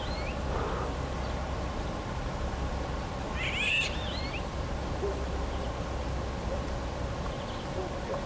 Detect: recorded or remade recorded